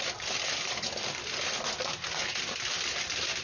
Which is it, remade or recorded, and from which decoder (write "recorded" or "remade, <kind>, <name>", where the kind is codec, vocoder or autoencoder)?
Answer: recorded